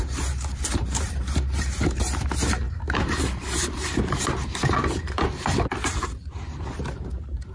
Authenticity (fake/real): fake